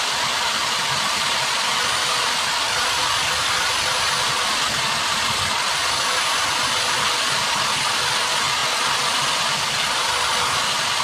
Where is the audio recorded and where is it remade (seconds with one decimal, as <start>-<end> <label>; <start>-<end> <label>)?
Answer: 0.0-11.0 recorded

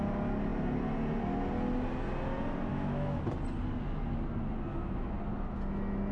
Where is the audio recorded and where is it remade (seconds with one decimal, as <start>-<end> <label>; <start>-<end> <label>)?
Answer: 0.0-2.7 recorded; 2.7-3.2 remade; 3.2-4.7 recorded; 4.7-5.2 remade; 5.2-6.1 recorded

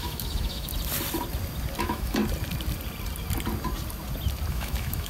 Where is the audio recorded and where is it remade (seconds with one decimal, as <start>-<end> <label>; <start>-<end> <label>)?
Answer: 0.0-0.7 remade; 0.7-1.8 recorded; 1.8-2.2 remade; 2.2-4.5 recorded; 4.5-5.1 remade

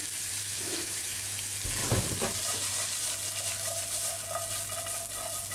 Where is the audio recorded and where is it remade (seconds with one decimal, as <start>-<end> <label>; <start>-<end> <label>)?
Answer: 0.0-0.4 recorded; 0.4-1.2 remade; 1.2-5.5 recorded

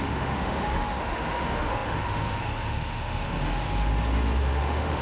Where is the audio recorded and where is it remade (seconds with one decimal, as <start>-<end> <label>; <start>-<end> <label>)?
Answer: 0.0-3.9 remade; 3.9-4.4 recorded; 4.4-5.0 remade

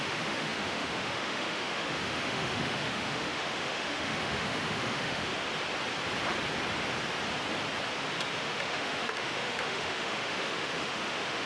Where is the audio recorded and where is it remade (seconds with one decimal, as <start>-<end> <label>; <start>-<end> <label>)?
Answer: 0.0-5.3 remade; 5.3-8.4 recorded; 8.4-11.5 remade